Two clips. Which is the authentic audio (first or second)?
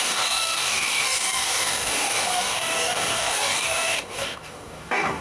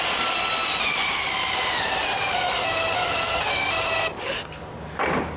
second